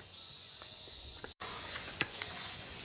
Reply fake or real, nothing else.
fake